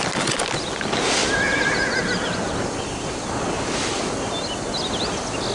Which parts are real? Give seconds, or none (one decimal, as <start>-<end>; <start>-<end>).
0.0-5.5